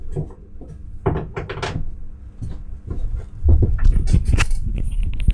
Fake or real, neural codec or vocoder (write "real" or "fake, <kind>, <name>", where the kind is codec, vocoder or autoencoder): real